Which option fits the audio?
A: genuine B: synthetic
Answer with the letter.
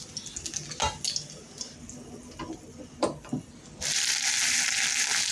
A